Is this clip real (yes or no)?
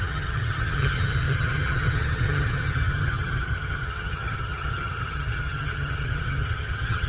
no